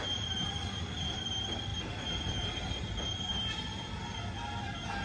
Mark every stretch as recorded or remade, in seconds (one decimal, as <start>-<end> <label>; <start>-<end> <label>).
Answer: 0.0-5.0 recorded